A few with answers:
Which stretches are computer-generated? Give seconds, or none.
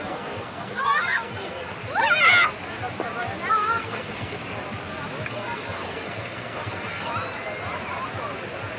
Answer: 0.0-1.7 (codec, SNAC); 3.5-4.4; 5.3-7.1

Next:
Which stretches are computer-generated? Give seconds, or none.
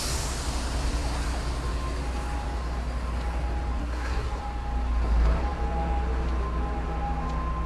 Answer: 3.8-4.4 (codec, SNAC)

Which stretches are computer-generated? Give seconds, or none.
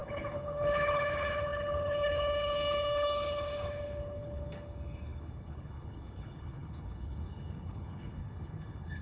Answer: 0.0-9.0 (codec, HILCodec)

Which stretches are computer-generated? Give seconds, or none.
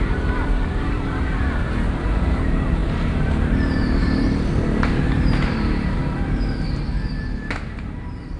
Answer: 0.0-6.0 (vocoder, BigVGAN v2); 7.7-8.4